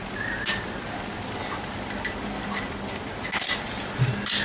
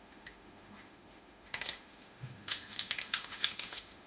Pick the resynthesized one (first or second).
second